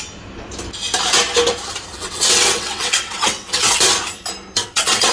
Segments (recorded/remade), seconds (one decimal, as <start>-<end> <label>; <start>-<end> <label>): 0.0-1.9 recorded; 1.9-3.8 remade; 3.8-4.6 recorded; 4.6-5.1 remade